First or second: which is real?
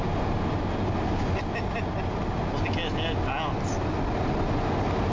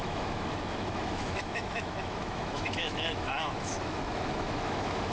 first